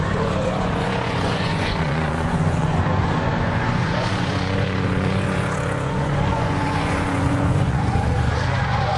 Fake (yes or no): yes